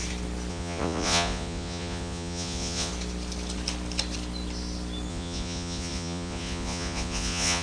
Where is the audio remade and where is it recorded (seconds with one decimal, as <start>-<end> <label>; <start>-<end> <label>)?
0.0-0.5 recorded; 0.5-2.9 remade; 2.9-5.1 recorded; 5.1-7.6 remade